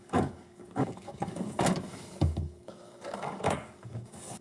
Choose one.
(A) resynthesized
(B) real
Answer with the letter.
A